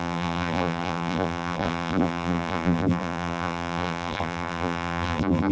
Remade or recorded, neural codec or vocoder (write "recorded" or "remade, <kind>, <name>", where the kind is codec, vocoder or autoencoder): remade, vocoder, BigVGAN v2